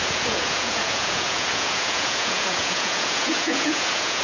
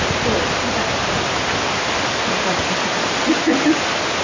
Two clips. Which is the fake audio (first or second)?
first